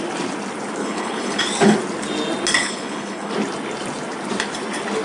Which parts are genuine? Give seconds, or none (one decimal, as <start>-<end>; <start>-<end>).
0.0-0.8; 1.4-2.6; 3.3-5.0